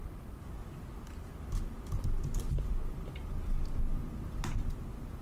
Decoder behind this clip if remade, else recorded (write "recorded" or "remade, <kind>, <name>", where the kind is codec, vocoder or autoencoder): recorded